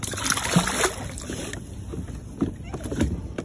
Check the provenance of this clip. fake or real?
real